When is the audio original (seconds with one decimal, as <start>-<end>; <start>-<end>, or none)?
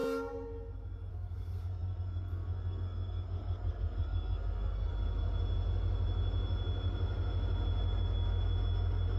0.0-1.1; 4.9-9.2